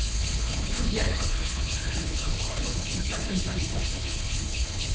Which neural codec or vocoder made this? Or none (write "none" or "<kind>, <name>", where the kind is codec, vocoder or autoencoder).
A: codec, HILCodec